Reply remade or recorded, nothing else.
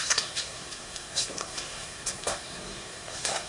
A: remade